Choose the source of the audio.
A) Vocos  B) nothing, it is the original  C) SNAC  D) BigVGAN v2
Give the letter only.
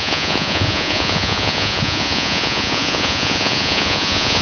A